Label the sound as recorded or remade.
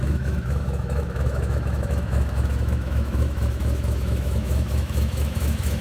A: remade